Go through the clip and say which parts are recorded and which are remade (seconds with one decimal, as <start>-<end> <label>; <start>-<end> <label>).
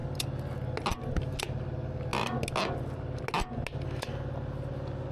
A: 0.0-5.1 recorded